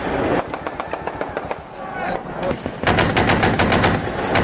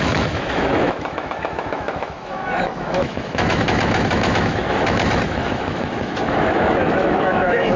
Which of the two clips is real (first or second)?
first